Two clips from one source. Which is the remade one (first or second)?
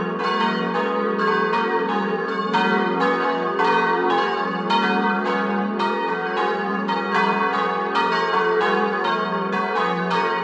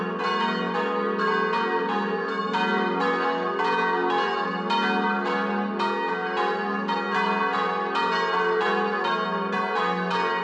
first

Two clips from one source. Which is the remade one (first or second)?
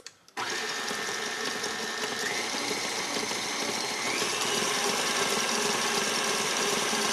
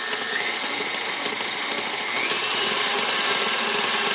first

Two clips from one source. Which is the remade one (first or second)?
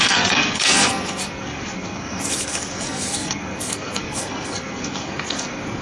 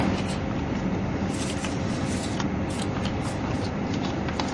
first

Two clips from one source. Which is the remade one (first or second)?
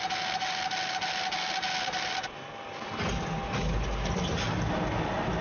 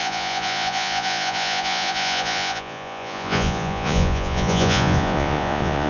second